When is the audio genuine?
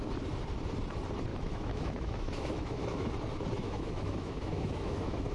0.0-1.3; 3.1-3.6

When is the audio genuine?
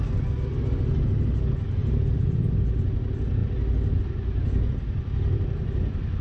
0.0-6.2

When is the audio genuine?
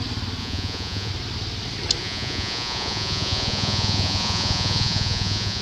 0.0-0.4; 1.1-2.0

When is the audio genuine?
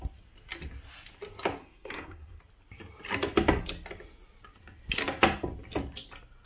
0.0-1.6; 2.4-6.5